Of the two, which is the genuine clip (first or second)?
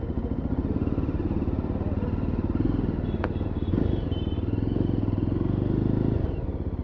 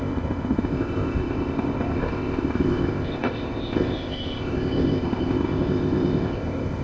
first